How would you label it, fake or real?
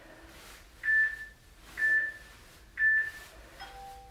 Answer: real